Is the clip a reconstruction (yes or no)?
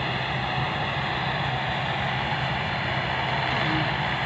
no